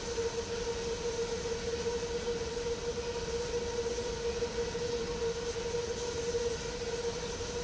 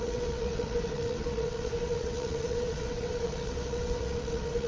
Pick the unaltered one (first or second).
first